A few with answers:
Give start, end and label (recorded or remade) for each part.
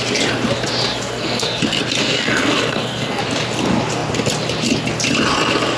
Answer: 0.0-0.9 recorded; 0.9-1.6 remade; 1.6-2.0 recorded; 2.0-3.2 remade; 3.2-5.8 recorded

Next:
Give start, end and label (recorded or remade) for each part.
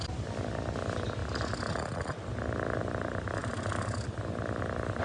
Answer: 0.0-1.2 remade; 1.2-2.8 recorded; 2.8-5.0 remade